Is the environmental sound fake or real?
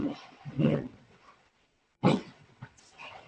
fake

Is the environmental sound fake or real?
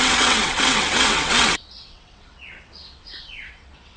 fake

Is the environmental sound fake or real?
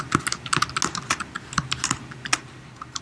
real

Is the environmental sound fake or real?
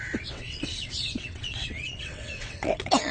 fake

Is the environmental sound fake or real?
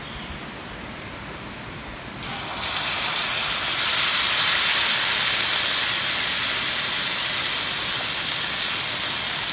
real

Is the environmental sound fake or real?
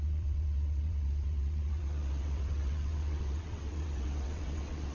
fake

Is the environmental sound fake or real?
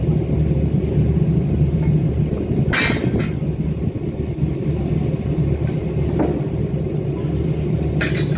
real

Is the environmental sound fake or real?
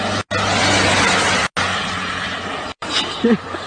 real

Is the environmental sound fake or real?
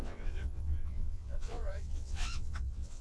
fake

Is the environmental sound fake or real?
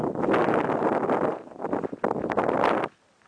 real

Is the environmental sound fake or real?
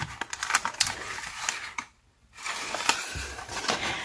real